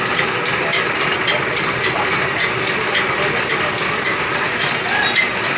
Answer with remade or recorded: recorded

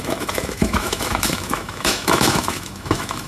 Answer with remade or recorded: remade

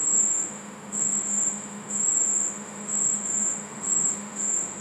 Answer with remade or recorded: remade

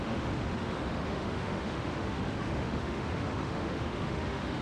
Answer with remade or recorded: remade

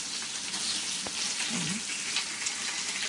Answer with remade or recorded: recorded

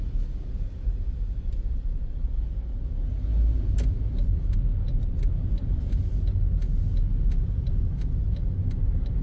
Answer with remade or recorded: recorded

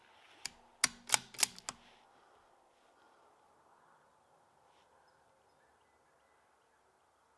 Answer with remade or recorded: recorded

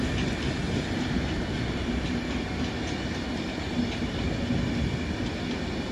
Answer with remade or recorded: recorded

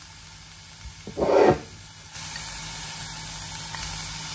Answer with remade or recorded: recorded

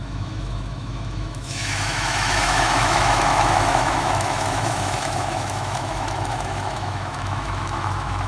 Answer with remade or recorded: remade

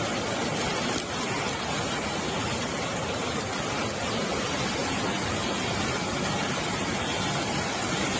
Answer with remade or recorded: recorded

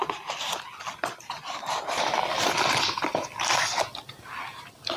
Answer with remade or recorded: recorded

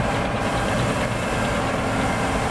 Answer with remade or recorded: recorded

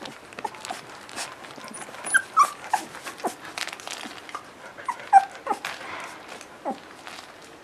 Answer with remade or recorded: recorded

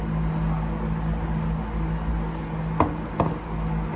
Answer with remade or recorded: recorded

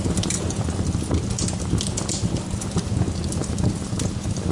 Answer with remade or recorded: recorded